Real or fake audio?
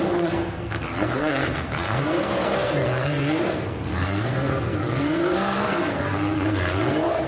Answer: fake